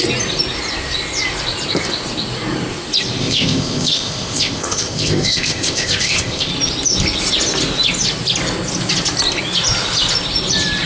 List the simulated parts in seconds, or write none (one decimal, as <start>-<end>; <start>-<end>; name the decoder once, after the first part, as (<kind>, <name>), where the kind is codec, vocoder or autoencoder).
3.2-6.5 (codec, ZipCodec)